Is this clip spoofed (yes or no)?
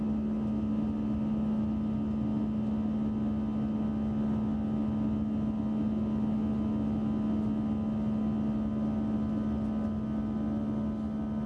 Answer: no